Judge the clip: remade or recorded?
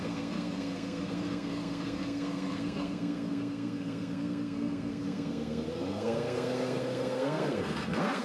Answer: remade